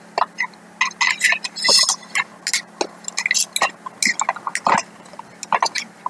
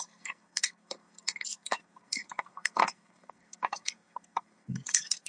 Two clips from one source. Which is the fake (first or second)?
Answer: second